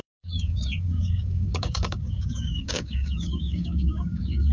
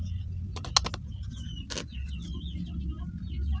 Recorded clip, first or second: second